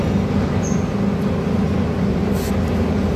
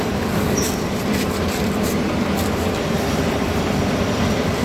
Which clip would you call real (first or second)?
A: first